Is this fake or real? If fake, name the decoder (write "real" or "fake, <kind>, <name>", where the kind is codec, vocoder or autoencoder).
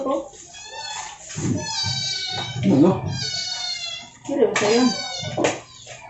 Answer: real